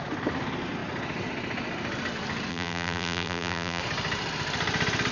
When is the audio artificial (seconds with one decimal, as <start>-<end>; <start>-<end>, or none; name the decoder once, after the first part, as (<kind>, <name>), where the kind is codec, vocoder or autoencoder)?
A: 2.5-3.8 (vocoder, BigVGAN v2)